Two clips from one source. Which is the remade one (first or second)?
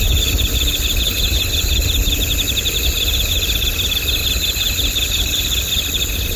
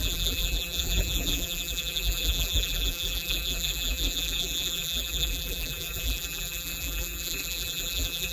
second